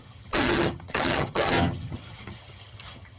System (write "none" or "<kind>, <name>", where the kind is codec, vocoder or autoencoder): vocoder, HiFi-GAN